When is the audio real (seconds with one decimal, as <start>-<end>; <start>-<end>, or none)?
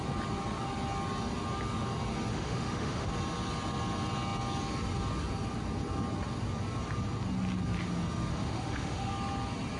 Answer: 0.0-2.3; 3.1-8.3; 9.1-9.8